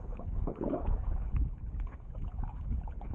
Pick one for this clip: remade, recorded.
remade